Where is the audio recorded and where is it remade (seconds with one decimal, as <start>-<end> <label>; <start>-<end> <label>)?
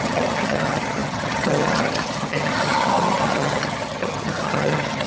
0.0-5.1 remade